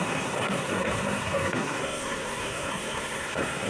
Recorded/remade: remade